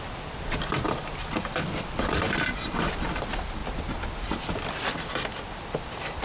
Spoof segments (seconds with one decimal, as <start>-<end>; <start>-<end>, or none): none